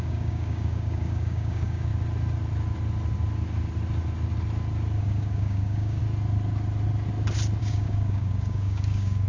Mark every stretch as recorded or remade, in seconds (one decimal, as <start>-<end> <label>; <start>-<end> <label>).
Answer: 0.0-1.9 remade; 1.9-5.0 recorded; 5.0-6.0 remade; 6.0-7.6 recorded; 7.6-9.3 remade